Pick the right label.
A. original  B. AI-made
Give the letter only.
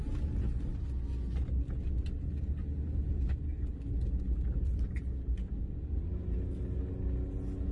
A